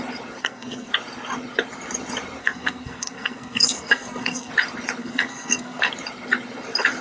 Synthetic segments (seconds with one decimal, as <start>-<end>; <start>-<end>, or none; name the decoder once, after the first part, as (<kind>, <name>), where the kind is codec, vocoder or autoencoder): 0.4-0.9 (codec, SNAC); 2.4-4.5; 5.0-5.9